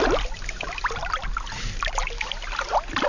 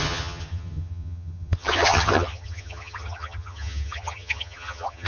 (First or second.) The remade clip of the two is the second